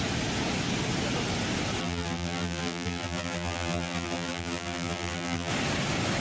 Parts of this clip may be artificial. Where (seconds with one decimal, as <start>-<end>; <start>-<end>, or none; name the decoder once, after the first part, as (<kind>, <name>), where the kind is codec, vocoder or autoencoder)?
1.8-5.5 (vocoder, BigVGAN v2)